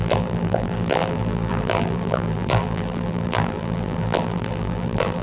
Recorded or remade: remade